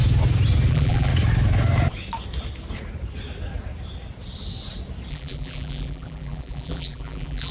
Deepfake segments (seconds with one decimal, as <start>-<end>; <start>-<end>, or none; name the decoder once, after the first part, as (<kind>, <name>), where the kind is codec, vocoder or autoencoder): 0.7-1.1 (vocoder, BigVGAN v2); 5.1-7.5